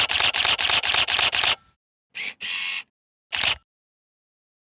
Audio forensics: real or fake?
real